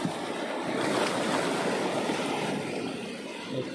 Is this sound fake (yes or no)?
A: no